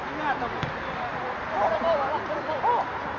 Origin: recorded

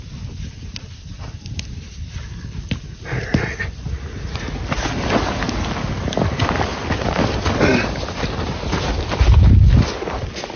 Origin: recorded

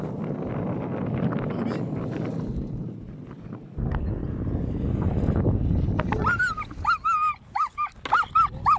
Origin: recorded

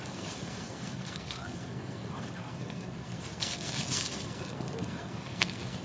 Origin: remade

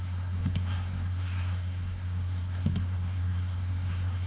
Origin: remade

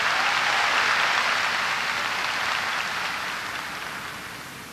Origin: recorded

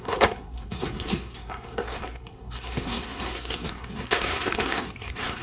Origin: remade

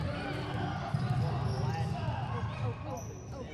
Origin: recorded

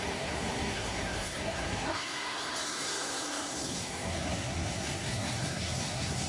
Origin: remade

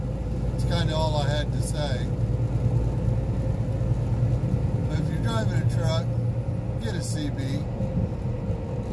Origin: recorded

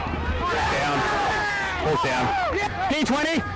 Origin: recorded